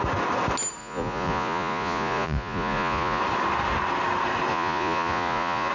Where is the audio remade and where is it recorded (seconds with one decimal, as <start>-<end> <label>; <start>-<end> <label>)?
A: 0.0-0.8 recorded; 0.8-3.2 remade; 3.2-4.5 recorded; 4.5-5.7 remade